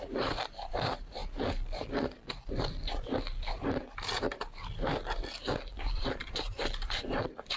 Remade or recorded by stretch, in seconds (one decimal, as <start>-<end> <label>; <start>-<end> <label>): 0.0-1.2 remade; 1.2-5.8 recorded; 5.8-7.6 remade